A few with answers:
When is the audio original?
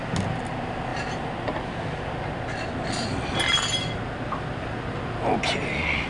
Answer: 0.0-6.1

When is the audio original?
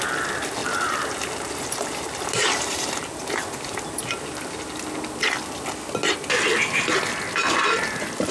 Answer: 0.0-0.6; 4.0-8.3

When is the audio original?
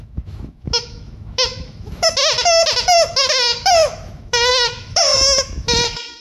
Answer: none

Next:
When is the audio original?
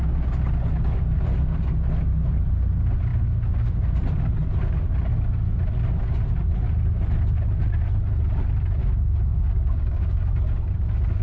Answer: 0.0-8.8; 10.2-11.2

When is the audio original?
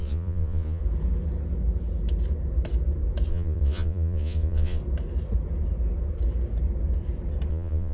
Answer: 0.8-3.3; 4.8-7.5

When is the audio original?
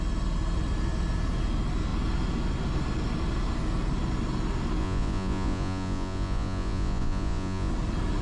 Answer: 0.0-4.8; 7.7-8.2